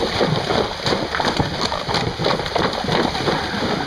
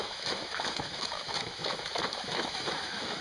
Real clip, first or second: first